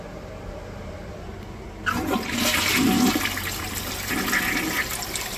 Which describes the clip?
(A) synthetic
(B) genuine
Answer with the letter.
B